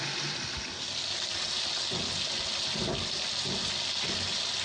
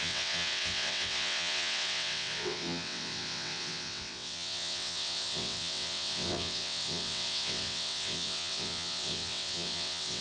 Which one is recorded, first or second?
first